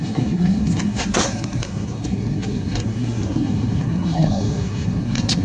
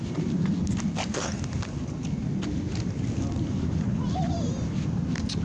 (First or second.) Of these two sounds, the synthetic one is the first